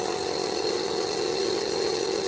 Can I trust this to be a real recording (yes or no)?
no